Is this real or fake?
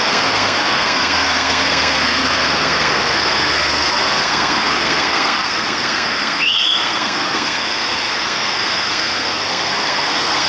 fake